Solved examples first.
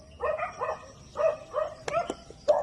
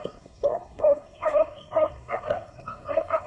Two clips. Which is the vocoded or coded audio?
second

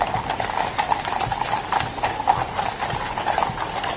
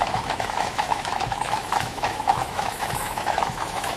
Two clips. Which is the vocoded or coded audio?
second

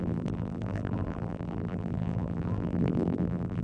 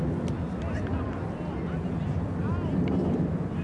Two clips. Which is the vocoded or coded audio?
first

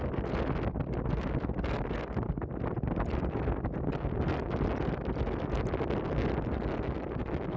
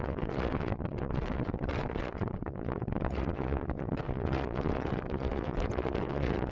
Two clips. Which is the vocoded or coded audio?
second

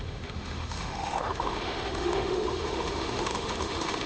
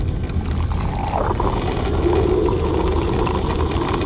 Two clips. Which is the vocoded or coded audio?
first